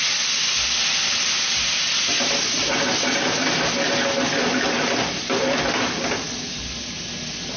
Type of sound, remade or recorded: recorded